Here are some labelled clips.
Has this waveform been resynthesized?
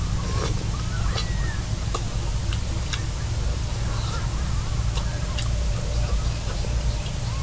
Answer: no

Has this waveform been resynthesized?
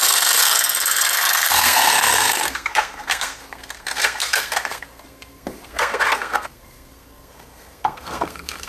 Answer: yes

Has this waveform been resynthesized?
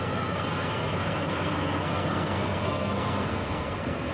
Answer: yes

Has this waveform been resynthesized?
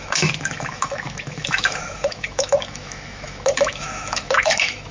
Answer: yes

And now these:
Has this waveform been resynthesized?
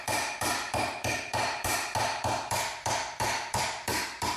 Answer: yes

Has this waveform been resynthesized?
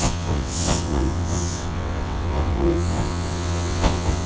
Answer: yes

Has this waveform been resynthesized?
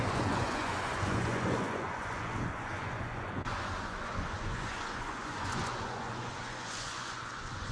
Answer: yes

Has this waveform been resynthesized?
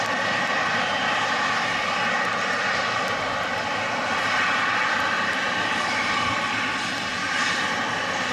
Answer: no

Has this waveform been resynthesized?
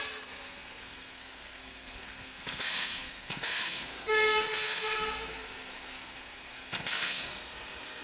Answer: yes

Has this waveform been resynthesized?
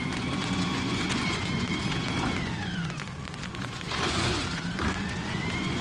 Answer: yes